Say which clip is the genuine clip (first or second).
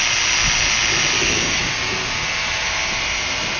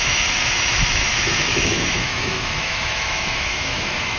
first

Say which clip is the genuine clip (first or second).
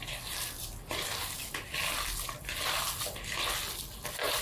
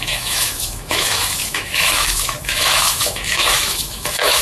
first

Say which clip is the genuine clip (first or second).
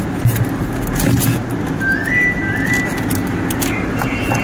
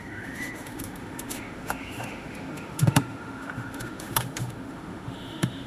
first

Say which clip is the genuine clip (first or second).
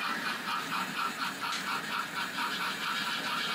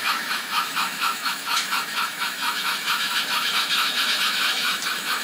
first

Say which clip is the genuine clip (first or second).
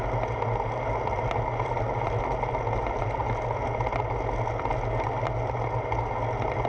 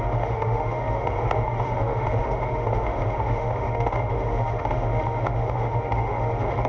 first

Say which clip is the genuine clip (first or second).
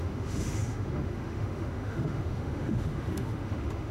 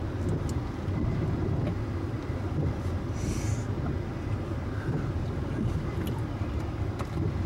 second